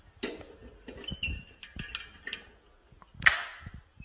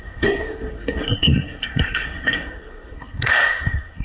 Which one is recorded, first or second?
first